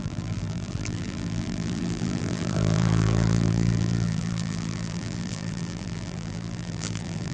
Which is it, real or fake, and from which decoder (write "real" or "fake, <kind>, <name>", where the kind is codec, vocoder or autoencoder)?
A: fake, vocoder, BigVGAN v2